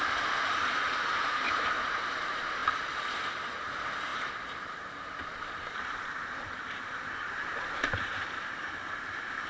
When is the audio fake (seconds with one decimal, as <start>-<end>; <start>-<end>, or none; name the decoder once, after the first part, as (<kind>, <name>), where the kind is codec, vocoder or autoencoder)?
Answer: 0.0-2.6 (vocoder, BigVGAN v2); 3.3-9.5